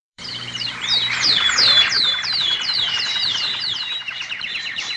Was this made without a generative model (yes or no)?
no